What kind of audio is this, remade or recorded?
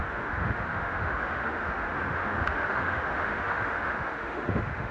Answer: remade